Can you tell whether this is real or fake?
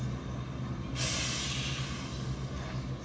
real